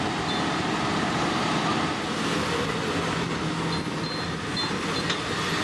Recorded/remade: recorded